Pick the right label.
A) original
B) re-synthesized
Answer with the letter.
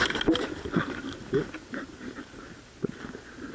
A